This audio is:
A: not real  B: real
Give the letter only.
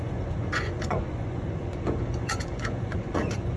A